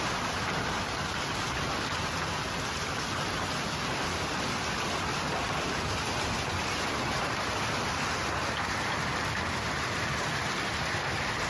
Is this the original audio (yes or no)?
yes